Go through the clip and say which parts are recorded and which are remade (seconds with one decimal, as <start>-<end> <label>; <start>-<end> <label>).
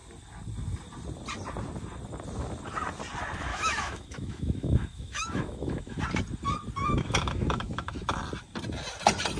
0.0-3.5 recorded; 3.5-6.0 remade; 6.0-6.8 recorded; 6.8-8.2 remade; 8.2-9.4 recorded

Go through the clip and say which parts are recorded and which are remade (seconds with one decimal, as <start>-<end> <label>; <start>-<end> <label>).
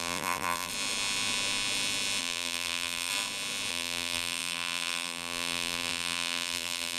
0.0-0.7 remade; 0.7-2.2 recorded; 2.2-3.1 remade; 3.1-3.7 recorded; 3.7-7.0 remade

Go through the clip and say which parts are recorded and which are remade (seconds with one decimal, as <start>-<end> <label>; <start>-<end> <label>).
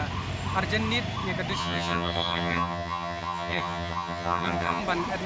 0.0-1.6 recorded; 1.6-4.8 remade; 4.8-5.3 recorded